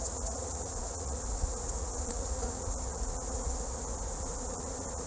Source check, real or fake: fake